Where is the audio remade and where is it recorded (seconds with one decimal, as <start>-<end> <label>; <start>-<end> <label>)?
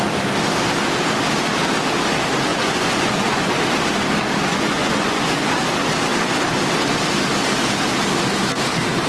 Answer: 0.0-2.5 recorded; 2.5-3.5 remade; 3.5-4.5 recorded; 4.5-5.3 remade; 5.3-9.1 recorded